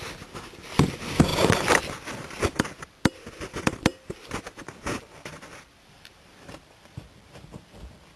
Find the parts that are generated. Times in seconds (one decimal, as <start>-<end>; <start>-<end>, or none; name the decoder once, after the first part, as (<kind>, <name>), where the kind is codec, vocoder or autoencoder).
0.0-8.2 (vocoder, BigVGAN v2)